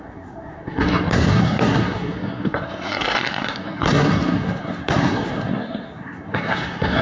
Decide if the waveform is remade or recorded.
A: remade